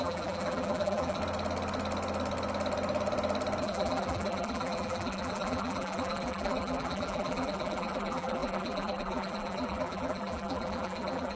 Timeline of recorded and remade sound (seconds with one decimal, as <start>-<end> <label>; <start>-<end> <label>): 0.0-1.2 remade; 1.2-3.6 recorded; 3.6-11.4 remade